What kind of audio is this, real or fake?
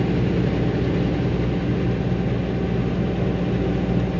real